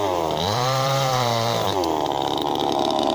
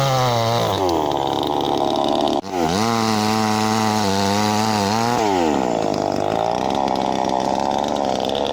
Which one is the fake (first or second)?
first